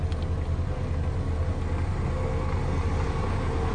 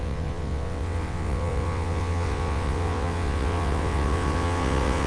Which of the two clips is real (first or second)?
first